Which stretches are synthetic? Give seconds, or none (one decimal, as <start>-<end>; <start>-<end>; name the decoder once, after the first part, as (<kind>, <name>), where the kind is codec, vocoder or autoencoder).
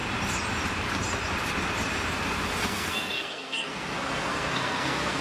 2.6-5.2 (codec, SNAC)